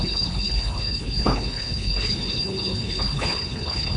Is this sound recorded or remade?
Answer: remade